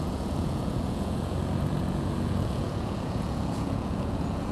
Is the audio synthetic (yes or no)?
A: yes